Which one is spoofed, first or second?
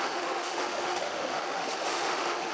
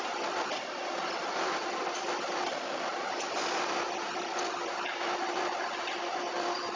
first